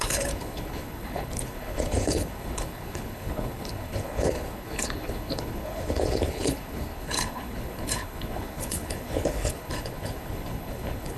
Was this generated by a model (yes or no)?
yes